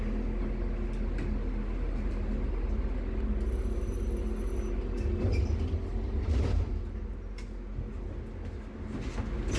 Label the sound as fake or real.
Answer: real